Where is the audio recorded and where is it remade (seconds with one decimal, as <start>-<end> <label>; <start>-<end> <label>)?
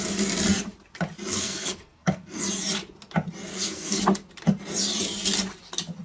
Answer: 0.0-1.3 recorded; 1.3-2.4 remade; 2.4-3.5 recorded; 3.5-4.0 remade; 4.0-6.0 recorded